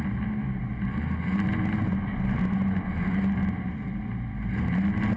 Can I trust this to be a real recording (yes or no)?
yes